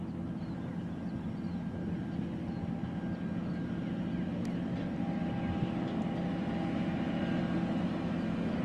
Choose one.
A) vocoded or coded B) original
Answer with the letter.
B